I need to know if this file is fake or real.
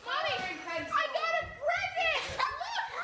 real